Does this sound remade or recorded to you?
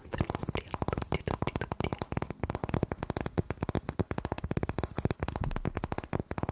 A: recorded